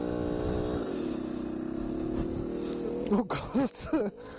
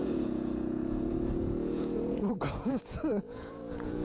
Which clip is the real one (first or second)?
first